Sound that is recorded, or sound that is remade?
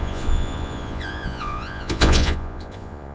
remade